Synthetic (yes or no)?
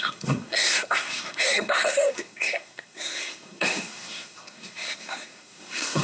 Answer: yes